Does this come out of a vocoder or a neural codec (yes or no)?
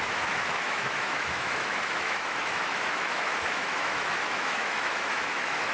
yes